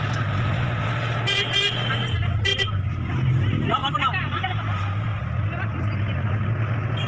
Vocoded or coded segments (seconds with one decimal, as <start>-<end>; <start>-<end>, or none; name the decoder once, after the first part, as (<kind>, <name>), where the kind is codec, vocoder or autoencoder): 3.8-5.2 (vocoder, BigVGAN v2)